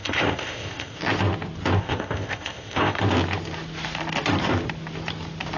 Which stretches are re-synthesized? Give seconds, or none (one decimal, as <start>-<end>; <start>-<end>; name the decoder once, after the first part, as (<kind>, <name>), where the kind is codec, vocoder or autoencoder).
0.0-1.0 (codec, ZipCodec); 1.8-3.0